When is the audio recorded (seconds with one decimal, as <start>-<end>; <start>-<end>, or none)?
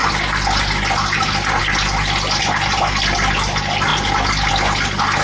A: 0.0-5.2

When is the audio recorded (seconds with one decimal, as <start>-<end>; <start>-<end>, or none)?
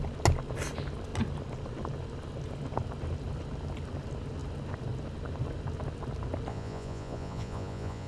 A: 0.0-6.5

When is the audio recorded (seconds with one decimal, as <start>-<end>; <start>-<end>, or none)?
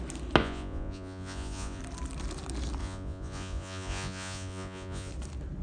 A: 0.0-0.4; 1.8-2.8; 5.1-5.6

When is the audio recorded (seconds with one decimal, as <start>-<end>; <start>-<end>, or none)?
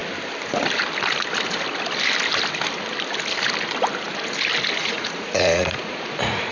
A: 0.0-4.8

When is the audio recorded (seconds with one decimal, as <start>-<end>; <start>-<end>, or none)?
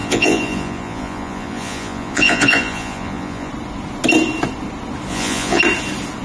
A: 3.5-5.1; 5.6-6.2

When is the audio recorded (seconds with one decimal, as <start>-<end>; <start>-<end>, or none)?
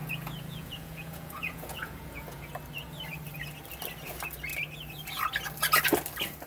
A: 2.5-6.5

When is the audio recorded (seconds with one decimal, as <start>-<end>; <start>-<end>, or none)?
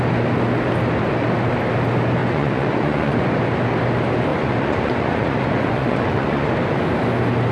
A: 0.0-2.2; 3.3-4.3; 6.5-7.5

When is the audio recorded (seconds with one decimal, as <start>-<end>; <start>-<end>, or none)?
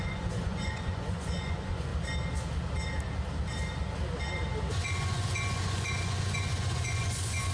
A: 1.9-4.7